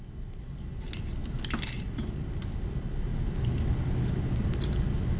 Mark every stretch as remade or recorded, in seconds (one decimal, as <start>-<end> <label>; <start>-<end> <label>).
0.0-5.2 recorded